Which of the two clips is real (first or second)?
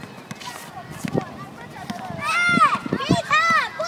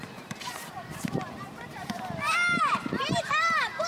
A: first